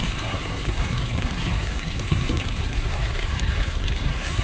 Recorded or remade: remade